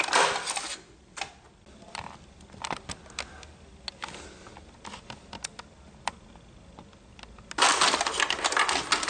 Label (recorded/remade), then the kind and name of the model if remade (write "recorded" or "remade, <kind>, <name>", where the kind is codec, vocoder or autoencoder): recorded